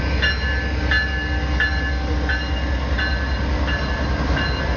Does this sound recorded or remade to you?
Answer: recorded